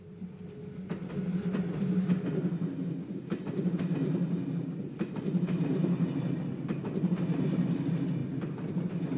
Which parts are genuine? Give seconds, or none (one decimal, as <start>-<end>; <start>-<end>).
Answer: 0.0-9.2